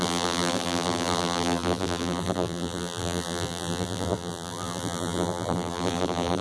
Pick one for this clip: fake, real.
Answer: fake